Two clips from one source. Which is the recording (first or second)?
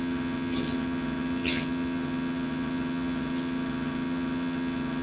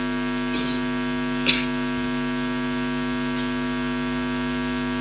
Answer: second